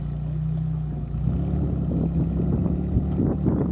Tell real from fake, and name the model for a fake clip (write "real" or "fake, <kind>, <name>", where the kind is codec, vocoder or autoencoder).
real